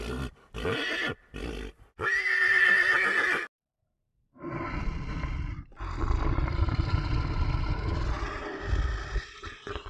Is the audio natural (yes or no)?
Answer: yes